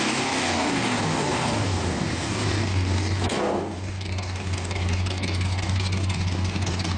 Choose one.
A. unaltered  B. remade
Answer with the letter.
B